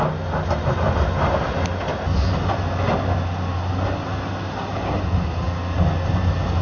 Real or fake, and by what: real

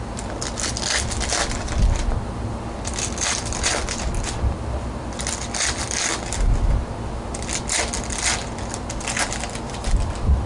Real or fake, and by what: real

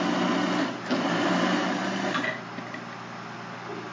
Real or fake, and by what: real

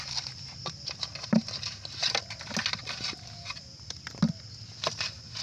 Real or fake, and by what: real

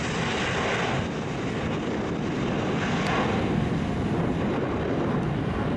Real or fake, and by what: real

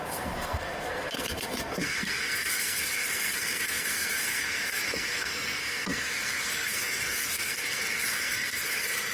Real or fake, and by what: fake, codec, SNAC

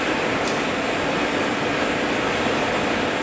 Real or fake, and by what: real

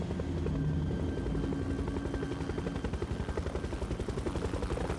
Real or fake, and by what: real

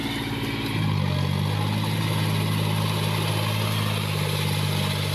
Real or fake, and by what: real